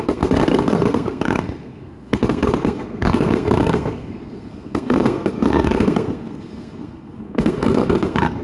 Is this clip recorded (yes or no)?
no